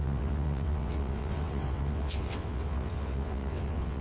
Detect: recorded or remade remade